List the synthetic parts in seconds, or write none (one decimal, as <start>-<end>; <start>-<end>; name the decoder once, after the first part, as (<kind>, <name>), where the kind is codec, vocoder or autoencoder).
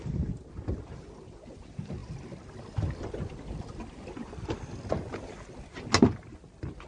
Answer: none